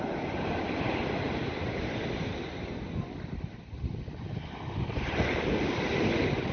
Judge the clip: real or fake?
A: real